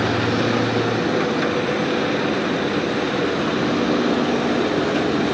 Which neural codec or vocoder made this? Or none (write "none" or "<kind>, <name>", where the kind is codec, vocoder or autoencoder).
none